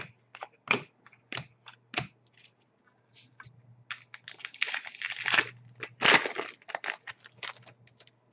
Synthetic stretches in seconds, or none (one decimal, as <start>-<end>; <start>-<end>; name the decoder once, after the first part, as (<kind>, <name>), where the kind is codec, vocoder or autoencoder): none